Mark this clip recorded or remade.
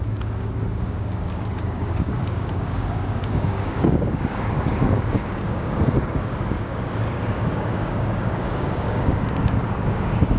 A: remade